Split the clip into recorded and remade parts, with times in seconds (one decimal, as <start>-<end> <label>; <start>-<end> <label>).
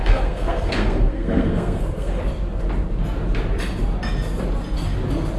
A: 0.0-2.2 remade; 2.2-5.4 recorded